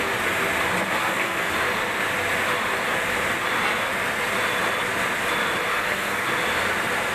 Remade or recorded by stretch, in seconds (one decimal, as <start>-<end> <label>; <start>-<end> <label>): 0.0-1.0 recorded; 1.0-1.5 remade; 1.5-5.7 recorded; 5.7-6.4 remade; 6.4-7.1 recorded